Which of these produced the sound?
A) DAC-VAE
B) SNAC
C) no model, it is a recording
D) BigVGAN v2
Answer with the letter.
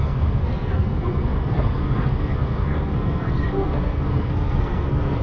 B